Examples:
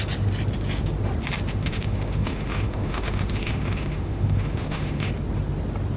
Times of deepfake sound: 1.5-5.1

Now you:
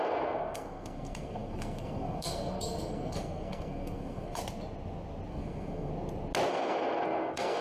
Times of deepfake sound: 0.0-4.4; 5.3-5.9; 6.5-7.6

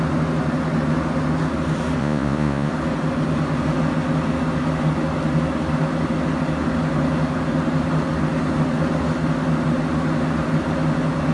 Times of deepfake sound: 2.0-2.7